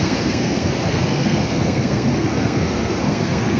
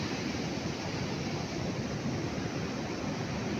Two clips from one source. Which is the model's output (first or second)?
first